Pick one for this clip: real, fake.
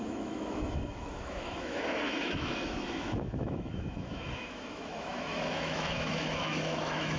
fake